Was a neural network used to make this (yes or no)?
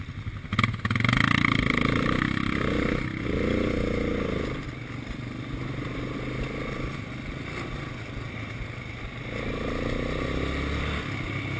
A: no